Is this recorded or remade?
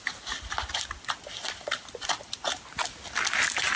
recorded